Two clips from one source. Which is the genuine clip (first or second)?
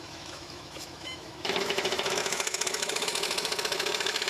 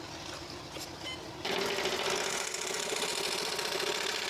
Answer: second